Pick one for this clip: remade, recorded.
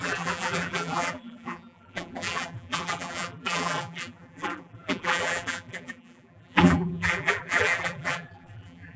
remade